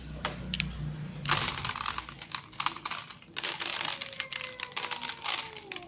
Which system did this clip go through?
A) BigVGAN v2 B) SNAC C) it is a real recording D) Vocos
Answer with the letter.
C